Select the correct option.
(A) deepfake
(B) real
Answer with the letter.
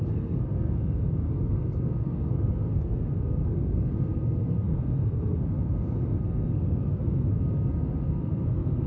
A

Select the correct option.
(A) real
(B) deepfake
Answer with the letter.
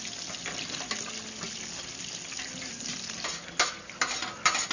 A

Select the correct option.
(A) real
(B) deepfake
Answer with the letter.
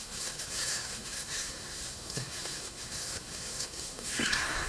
B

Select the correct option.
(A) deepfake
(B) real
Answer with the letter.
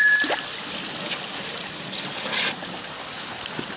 B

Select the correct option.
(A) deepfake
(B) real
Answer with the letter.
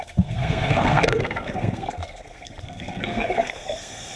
A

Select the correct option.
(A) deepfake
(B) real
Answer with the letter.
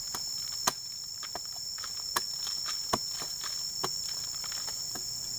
B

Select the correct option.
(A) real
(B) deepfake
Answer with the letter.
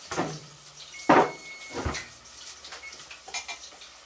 A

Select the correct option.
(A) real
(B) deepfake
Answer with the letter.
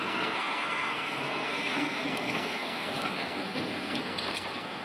B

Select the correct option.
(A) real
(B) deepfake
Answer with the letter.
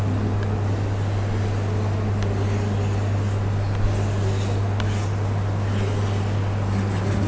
A